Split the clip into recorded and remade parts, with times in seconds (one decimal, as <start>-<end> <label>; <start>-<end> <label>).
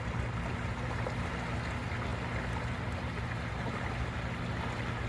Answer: 0.0-5.1 recorded